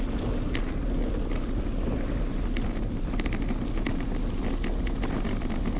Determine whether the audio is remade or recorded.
recorded